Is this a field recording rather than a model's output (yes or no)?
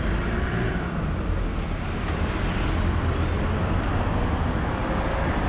yes